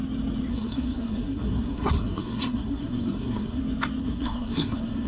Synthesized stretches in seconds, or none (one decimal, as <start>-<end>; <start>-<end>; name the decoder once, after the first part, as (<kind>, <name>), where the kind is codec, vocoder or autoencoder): 0.5-3.6 (codec, SNAC); 4.0-5.1

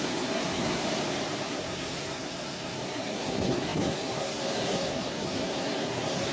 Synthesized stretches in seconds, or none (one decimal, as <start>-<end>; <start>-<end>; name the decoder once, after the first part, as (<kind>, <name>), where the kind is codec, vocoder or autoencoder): 0.0-0.8 (codec, SNAC); 1.5-6.3

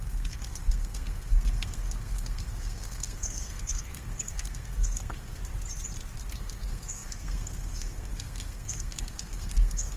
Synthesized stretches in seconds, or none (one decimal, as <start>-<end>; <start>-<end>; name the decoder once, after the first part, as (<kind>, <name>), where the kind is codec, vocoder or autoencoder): 0.0-5.4 (codec, SNAC); 6.3-10.0

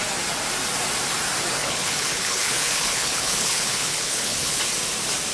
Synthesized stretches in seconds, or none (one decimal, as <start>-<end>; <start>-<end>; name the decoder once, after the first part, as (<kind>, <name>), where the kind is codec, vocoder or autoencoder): 1.6-4.6 (codec, HILCodec)

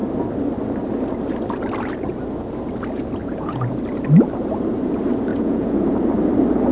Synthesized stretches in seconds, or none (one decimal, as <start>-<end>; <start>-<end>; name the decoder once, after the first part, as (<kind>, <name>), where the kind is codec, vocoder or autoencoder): 3.2-3.8 (vocoder, Vocos); 5.3-5.9

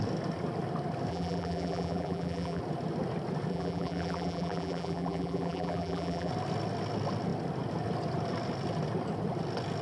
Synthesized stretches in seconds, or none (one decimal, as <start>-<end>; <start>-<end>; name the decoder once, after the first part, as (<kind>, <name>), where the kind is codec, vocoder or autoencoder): 1.1-2.6 (vocoder, BigVGAN v2); 3.5-6.3